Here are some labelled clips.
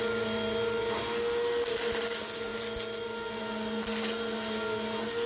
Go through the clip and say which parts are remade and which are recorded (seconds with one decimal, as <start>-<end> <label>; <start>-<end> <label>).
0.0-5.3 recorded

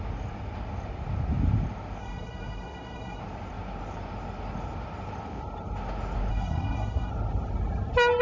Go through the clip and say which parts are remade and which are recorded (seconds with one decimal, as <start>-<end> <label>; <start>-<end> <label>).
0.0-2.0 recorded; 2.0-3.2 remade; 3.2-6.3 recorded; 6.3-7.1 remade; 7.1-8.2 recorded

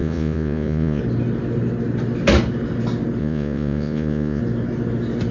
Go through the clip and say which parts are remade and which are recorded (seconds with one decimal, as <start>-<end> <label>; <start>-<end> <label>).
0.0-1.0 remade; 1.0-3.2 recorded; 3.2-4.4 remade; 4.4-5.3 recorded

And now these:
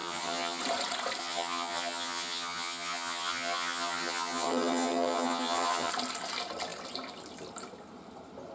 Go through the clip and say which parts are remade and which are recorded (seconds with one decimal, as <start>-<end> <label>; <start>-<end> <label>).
0.0-0.6 remade; 0.6-1.2 recorded; 1.2-5.9 remade; 5.9-8.5 recorded

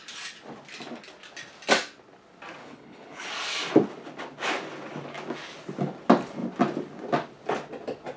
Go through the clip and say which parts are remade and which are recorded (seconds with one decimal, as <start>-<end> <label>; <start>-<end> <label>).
0.0-2.6 recorded; 2.6-3.3 remade; 3.3-8.2 recorded